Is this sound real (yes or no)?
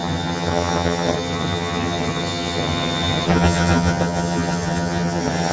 no